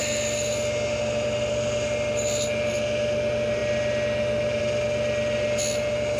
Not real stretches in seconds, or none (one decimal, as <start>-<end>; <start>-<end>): none